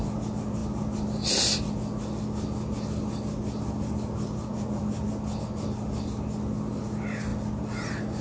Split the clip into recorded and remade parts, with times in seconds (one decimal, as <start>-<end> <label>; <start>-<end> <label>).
0.0-8.2 recorded